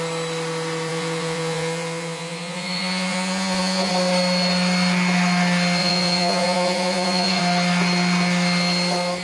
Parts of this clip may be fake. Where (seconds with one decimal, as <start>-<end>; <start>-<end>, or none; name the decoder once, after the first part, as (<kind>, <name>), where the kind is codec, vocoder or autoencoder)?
0.9-3.9 (vocoder, Vocos); 5.8-7.4